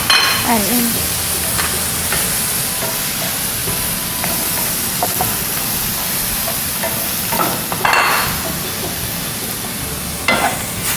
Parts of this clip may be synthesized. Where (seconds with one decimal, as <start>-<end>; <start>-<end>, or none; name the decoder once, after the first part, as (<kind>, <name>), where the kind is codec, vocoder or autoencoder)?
none